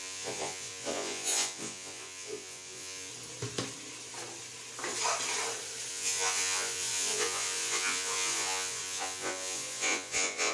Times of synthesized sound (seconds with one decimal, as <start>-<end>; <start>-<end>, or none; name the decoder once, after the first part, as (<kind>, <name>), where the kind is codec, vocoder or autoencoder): 0.0-3.1 (vocoder, Vocos); 5.9-10.5

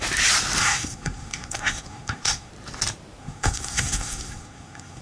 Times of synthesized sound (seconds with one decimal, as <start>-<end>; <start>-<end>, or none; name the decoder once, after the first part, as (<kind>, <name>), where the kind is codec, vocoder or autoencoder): 0.6-2.5 (codec, SNAC); 3.2-5.0